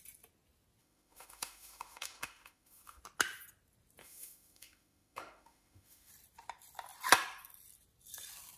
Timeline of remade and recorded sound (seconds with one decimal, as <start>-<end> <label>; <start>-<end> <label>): 0.0-0.8 recorded; 0.8-3.0 remade; 3.0-4.0 recorded; 4.0-6.1 remade; 6.1-8.6 recorded